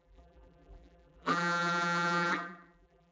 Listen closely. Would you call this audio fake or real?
fake